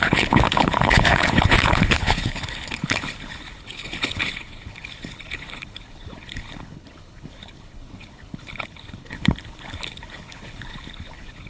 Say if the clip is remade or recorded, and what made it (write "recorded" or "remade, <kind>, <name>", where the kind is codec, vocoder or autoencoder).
remade, codec, HILCodec